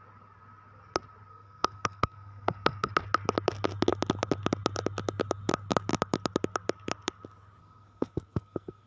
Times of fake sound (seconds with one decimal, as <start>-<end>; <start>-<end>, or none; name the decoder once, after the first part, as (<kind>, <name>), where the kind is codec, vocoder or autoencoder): 1.3-2.9 (codec, SNAC); 7.6-8.9